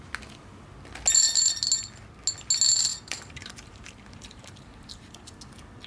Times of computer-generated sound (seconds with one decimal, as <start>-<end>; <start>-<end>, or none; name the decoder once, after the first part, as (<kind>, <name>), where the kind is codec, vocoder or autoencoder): 2.9-5.4 (vocoder, BigVGAN v2)